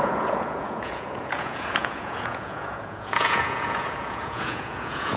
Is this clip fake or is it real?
fake